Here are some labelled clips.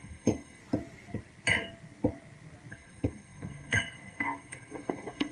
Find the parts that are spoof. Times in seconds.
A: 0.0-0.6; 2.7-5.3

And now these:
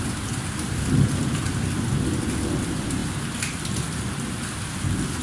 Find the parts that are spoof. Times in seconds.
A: none

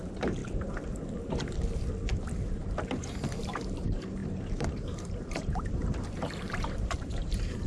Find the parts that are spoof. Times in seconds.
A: 0.0-0.4; 3.4-7.7

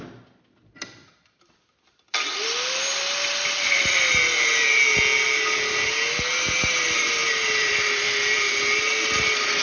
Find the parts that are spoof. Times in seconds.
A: 1.0-5.0; 7.2-8.5

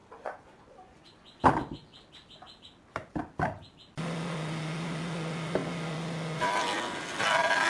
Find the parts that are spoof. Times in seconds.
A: 0.0-1.4